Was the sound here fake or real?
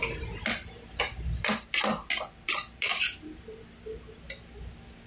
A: real